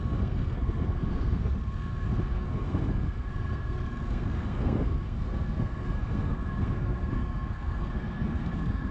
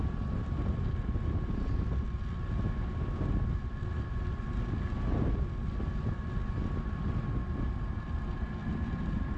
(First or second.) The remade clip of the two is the first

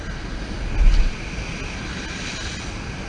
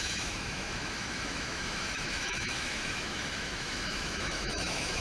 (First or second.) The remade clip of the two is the second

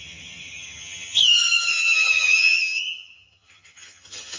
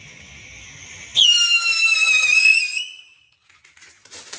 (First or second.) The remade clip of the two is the first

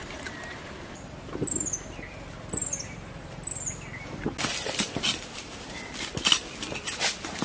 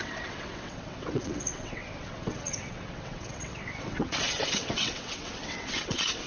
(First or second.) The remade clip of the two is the second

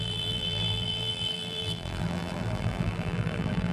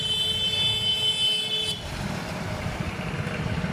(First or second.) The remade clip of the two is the first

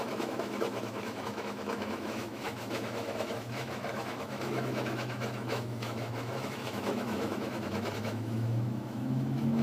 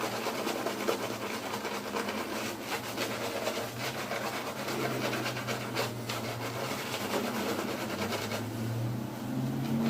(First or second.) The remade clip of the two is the first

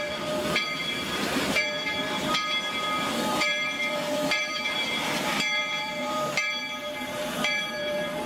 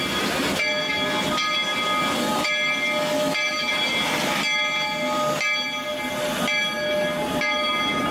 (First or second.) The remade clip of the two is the first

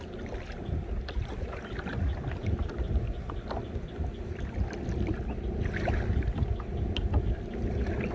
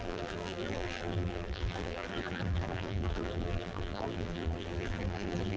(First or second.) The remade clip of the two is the second